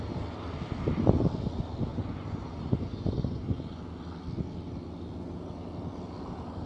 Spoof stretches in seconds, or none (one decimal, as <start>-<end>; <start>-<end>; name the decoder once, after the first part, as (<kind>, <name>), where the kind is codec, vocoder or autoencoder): 1.9-3.8 (vocoder, Vocos)